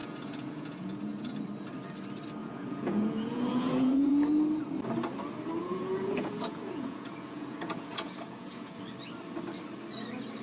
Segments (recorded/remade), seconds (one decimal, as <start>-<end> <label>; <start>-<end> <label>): 0.0-1.3 remade; 1.3-2.4 recorded; 2.4-4.1 remade; 4.1-5.6 recorded; 5.6-8.8 remade; 8.8-10.4 recorded